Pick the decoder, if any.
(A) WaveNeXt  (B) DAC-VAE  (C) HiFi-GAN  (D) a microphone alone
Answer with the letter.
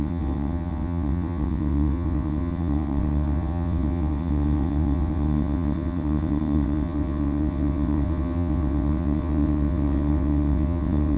A